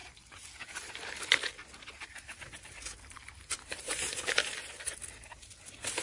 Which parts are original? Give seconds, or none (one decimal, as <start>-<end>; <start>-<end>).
1.4-6.0